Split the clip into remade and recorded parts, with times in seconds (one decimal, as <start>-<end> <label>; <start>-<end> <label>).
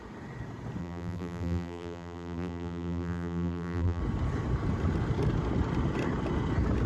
0.0-0.8 recorded; 0.8-4.0 remade; 4.0-6.9 recorded